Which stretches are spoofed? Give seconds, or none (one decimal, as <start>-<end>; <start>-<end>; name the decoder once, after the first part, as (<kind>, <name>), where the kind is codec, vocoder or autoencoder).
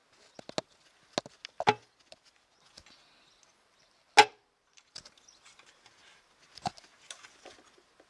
none